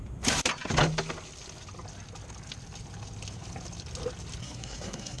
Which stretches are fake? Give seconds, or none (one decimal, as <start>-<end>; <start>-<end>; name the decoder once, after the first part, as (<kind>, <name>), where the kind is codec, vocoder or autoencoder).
4.4-5.2 (codec, SNAC)